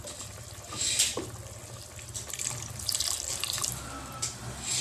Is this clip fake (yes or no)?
no